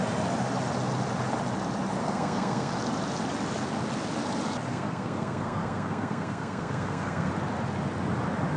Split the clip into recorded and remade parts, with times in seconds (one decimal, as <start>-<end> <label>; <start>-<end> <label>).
0.0-2.0 recorded; 2.0-2.7 remade; 2.7-4.7 recorded; 4.7-7.3 remade; 7.3-8.6 recorded

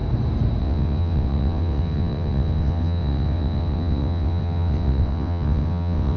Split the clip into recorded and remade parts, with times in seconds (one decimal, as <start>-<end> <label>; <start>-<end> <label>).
0.0-0.6 recorded; 0.6-6.2 remade